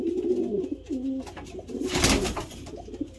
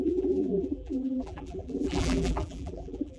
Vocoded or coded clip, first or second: second